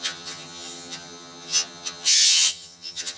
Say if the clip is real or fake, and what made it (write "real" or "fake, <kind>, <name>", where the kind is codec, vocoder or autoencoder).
fake, vocoder, HiFi-GAN